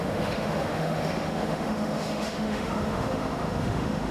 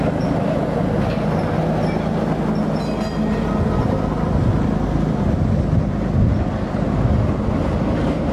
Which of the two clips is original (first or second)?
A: second